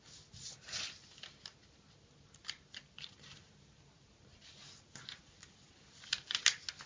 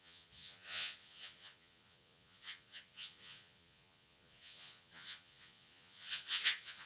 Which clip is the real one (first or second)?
first